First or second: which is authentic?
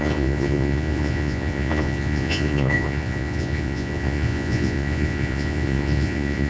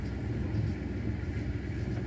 second